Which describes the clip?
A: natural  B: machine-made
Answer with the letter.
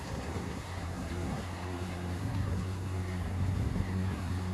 B